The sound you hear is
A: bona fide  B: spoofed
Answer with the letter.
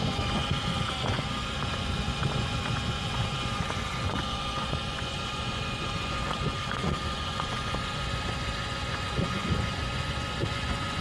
B